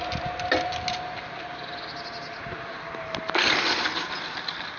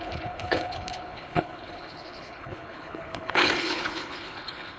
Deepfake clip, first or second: second